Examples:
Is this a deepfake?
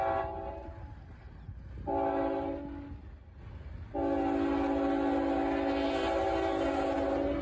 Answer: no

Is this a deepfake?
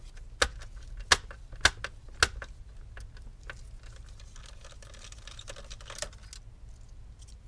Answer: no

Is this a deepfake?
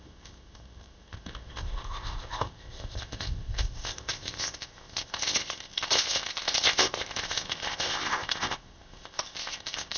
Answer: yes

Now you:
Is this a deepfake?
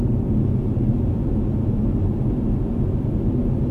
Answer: no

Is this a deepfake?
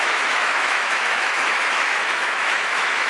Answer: yes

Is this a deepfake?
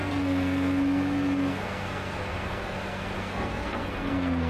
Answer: yes